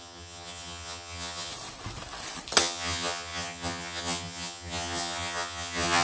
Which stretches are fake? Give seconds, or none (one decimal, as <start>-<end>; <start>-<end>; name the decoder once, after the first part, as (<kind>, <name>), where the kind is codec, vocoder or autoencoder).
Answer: 0.0-1.5 (vocoder, HiFi-GAN); 2.6-6.0